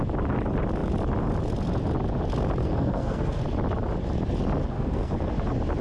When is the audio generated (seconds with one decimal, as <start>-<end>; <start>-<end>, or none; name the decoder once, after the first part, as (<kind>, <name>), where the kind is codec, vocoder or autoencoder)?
2.6-3.4 (codec, SNAC); 4.6-5.3